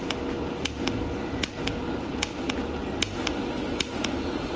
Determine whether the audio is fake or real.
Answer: real